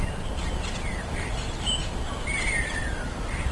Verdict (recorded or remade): remade